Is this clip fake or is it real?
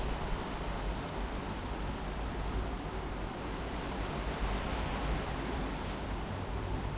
real